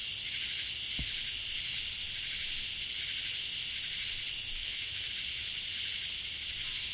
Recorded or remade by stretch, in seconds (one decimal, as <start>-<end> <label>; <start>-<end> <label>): 0.0-4.6 recorded; 4.6-5.1 remade; 5.1-6.9 recorded

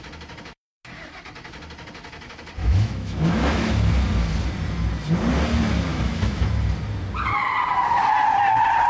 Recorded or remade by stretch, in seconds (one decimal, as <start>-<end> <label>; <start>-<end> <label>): 0.0-2.6 recorded; 2.6-3.9 remade; 3.9-5.9 recorded; 5.9-6.5 remade; 6.5-8.9 recorded

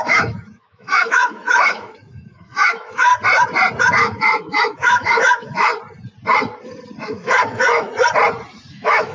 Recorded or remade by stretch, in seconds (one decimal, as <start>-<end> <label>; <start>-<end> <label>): 0.0-3.1 remade; 3.1-3.8 recorded; 3.8-5.7 remade; 5.7-7.0 recorded; 7.0-7.9 remade; 7.9-8.7 recorded; 8.7-9.1 remade

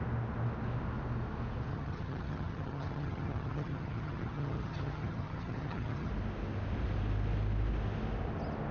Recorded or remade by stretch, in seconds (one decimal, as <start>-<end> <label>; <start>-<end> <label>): 0.0-1.7 recorded; 1.7-6.1 remade; 6.1-8.7 recorded

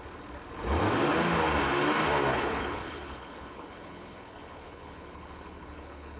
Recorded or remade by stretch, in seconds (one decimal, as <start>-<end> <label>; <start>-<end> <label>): 0.0-2.3 recorded; 2.3-6.2 remade